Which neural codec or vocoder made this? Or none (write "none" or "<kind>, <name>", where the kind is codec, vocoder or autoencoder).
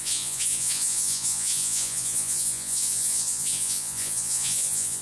vocoder, Vocos